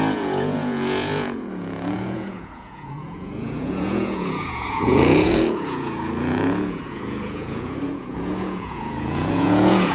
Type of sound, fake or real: fake